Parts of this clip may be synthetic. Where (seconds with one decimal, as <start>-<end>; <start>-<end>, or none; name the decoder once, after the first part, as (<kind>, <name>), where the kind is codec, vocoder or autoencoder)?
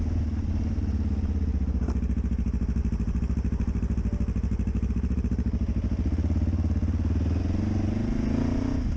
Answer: none